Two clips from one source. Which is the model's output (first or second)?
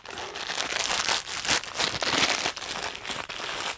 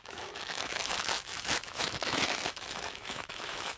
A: second